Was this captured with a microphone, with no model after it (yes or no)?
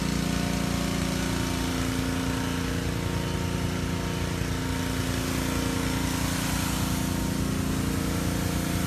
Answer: yes